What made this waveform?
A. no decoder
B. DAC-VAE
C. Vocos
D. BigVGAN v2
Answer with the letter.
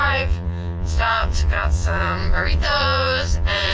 C